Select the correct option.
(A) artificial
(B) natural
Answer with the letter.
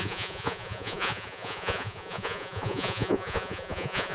A